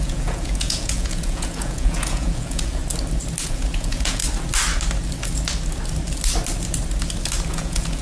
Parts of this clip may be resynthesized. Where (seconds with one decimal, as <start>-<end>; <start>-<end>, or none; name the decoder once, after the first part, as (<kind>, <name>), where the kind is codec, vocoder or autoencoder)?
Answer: 0.0-2.8 (vocoder, Vocos); 3.4-4.2; 7.5-8.0

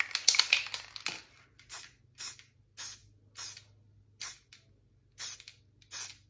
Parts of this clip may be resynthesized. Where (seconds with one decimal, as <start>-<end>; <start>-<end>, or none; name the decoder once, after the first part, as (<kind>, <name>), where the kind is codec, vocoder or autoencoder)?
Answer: none

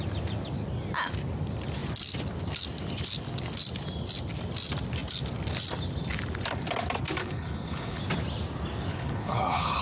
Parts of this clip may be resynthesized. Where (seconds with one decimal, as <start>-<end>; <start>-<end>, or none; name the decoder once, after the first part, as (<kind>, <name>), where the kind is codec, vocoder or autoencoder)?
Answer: 7.2-8.0 (codec, HILCodec); 8.9-9.8

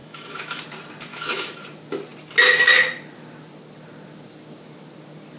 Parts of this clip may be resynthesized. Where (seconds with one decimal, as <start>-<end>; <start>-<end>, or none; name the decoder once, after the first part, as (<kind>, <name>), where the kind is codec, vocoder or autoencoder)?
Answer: 0.0-0.6 (autoencoder, DAC-VAE); 1.1-1.6

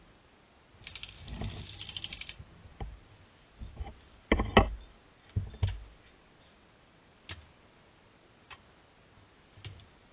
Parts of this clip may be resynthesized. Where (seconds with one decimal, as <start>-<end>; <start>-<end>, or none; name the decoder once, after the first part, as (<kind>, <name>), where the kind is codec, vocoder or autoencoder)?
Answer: none

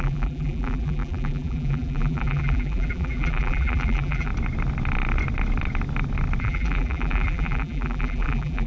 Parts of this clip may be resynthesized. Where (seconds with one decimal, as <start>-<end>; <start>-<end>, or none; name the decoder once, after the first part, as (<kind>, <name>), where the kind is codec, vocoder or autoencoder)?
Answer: 0.0-4.3 (vocoder, BigVGAN v2); 6.4-8.7

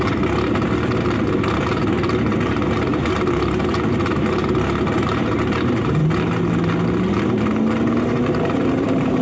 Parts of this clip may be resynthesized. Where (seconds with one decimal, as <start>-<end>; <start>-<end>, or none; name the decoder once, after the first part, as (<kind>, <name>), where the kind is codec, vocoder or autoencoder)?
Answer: 0.0-6.0 (vocoder, BigVGAN v2); 7.9-9.2